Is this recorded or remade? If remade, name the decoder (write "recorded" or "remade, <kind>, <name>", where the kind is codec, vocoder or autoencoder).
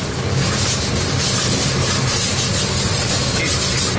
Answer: recorded